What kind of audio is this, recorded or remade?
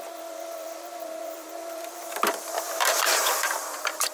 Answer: remade